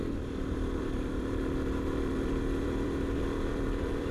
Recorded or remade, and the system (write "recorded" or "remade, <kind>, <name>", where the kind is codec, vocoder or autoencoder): remade, vocoder, BigVGAN v2